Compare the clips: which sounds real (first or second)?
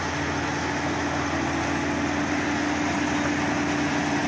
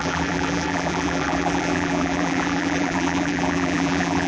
first